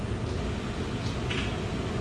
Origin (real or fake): real